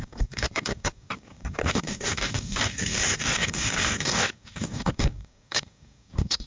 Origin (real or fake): fake